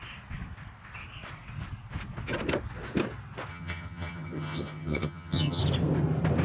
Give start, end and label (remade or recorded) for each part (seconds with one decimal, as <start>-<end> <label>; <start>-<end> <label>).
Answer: 0.0-3.5 recorded; 3.5-5.6 remade; 5.6-6.4 recorded